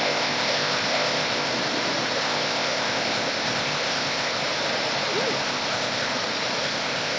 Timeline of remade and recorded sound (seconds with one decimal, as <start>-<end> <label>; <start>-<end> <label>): 0.0-1.5 remade; 1.5-2.1 recorded; 2.1-4.4 remade; 4.4-5.4 recorded; 5.4-6.1 remade; 6.1-6.6 recorded; 6.6-7.2 remade